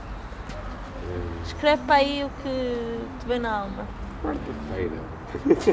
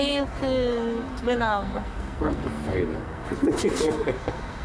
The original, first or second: first